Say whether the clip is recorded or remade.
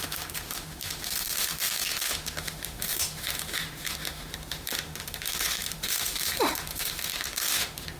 remade